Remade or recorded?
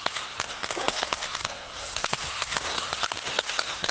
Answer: remade